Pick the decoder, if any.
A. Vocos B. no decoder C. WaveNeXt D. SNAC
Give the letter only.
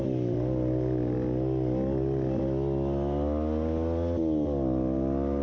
B